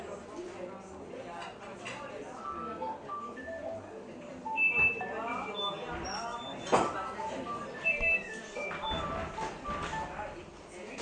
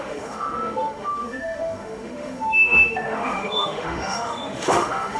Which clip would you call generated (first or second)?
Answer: second